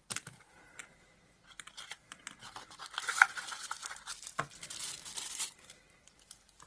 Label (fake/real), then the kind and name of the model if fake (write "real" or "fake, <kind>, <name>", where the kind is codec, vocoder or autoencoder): real